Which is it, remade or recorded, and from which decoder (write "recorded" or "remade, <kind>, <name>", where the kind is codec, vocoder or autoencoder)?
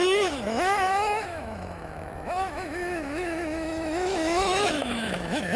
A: remade, autoencoder, DAC-VAE